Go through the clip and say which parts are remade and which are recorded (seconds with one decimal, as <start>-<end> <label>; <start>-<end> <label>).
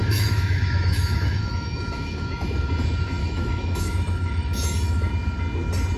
0.0-2.7 remade; 2.7-3.2 recorded; 3.2-5.1 remade; 5.1-6.0 recorded